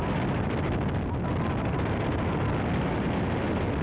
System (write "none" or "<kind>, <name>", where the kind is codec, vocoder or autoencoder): none